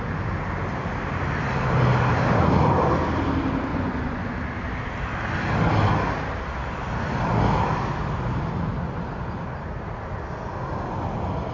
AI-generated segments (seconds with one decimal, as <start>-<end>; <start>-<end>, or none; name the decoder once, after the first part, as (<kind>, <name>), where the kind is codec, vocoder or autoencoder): 3.7-4.3 (vocoder, Vocos)